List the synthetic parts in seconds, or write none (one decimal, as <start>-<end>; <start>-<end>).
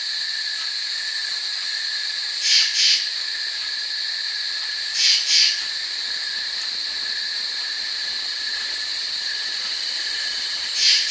8.9-10.7